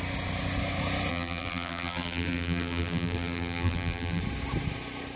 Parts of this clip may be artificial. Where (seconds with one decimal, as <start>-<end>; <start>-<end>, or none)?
1.1-4.2